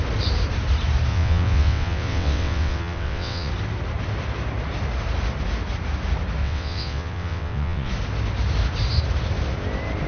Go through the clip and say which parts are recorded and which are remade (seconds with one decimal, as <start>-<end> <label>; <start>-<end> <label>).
0.0-1.1 recorded; 1.1-3.5 remade; 3.5-6.4 recorded; 6.4-7.9 remade; 7.9-10.1 recorded